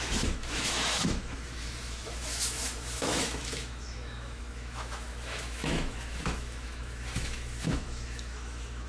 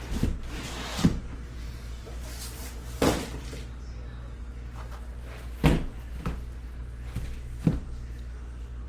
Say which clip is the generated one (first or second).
first